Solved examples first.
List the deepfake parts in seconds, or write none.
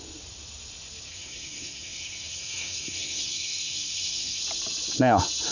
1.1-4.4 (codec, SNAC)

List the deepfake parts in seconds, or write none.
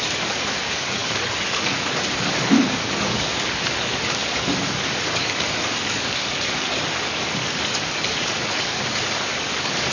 0.0-9.9 (codec, DAC)